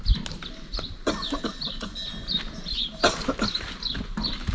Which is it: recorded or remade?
recorded